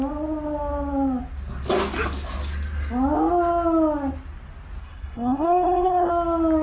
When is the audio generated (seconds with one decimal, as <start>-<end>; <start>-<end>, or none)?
4.8-6.1